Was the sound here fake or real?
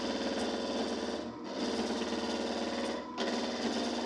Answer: real